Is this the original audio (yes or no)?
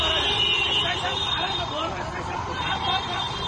no